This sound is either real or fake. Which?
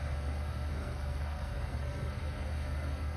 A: fake